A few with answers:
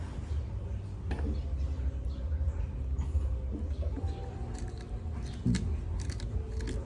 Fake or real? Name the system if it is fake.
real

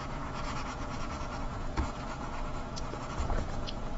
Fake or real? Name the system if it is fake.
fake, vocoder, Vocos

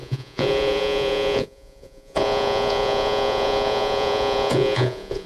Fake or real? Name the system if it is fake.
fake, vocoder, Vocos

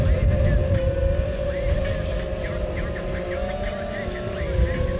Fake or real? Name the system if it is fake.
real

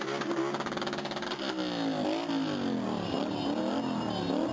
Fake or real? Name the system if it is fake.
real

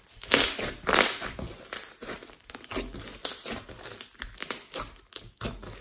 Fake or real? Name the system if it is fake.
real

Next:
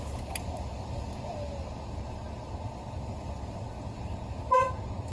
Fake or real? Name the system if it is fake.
real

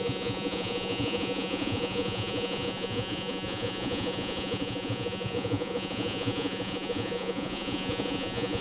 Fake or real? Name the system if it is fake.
fake, vocoder, Vocos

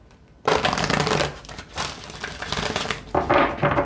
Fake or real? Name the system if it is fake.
real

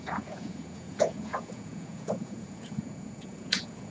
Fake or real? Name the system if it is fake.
fake, vocoder, Vocos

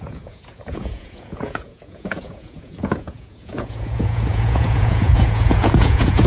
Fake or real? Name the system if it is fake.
fake, vocoder, Vocos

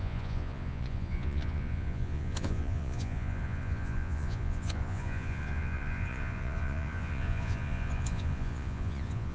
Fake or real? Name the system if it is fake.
fake, vocoder, Vocos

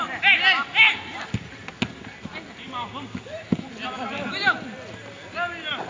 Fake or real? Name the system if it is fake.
real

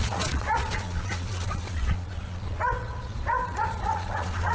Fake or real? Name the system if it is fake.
fake, vocoder, Vocos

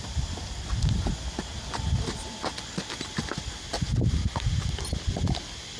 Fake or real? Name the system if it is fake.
real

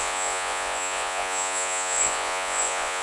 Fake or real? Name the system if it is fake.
fake, vocoder, Vocos